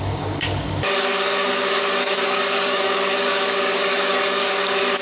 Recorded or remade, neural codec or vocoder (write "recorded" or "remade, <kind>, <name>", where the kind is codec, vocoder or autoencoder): remade, codec, DAC